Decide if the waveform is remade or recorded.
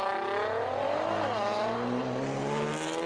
recorded